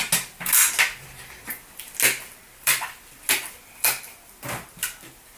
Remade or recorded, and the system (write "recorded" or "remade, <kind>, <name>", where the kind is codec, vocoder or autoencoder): recorded